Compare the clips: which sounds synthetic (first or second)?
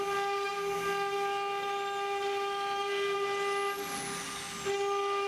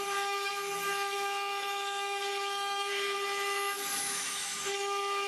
second